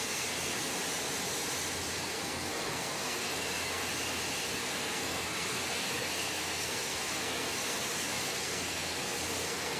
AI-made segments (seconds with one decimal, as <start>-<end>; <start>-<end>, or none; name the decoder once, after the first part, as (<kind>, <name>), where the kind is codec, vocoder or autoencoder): 0.0-0.7 (codec, SNAC); 2.0-3.9; 4.4-9.8